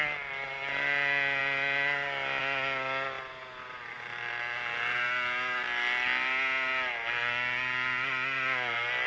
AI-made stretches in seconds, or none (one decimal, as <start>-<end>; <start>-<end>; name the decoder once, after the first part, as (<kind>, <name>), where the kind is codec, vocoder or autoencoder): none